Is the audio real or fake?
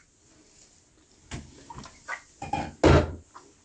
real